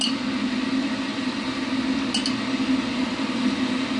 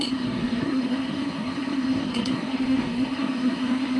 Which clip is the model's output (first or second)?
second